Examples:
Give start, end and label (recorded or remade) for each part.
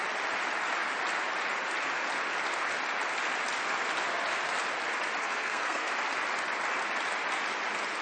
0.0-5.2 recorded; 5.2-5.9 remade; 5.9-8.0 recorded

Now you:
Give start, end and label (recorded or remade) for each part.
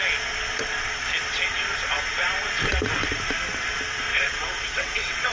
0.0-4.1 recorded; 4.1-5.3 remade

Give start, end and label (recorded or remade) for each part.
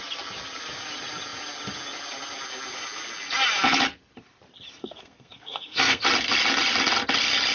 0.0-4.8 recorded; 4.8-6.0 remade; 6.0-7.5 recorded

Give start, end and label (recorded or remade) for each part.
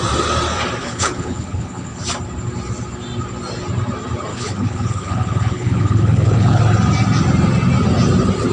0.0-0.8 recorded; 0.8-2.0 remade; 2.0-4.3 recorded; 4.3-6.6 remade; 6.6-8.5 recorded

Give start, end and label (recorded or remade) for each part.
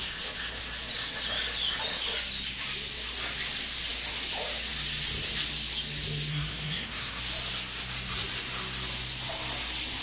0.0-6.3 recorded; 6.3-7.2 remade; 7.2-10.0 recorded